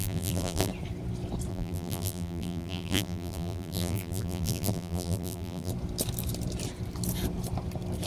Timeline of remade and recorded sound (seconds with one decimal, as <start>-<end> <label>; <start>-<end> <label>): 0.0-0.7 remade; 0.7-1.5 recorded; 1.5-5.7 remade; 5.7-8.1 recorded